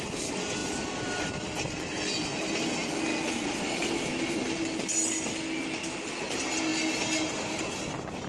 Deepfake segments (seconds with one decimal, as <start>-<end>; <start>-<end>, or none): none